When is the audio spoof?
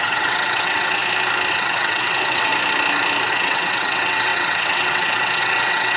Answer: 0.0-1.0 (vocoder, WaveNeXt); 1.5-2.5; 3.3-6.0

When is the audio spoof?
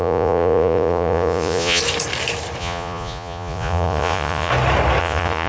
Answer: 0.0-1.8 (vocoder, Vocos); 2.6-4.5; 5.0-5.5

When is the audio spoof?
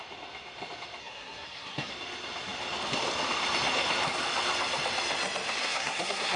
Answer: 1.0-1.9 (codec, SNAC); 5.6-6.4